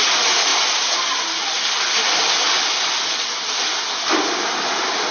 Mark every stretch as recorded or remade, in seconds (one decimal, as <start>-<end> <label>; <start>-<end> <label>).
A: 0.0-5.1 recorded